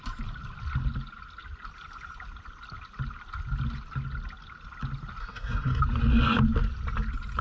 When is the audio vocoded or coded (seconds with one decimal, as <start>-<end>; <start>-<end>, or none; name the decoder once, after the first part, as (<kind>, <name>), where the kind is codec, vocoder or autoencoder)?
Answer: 5.2-5.8 (codec, SNAC)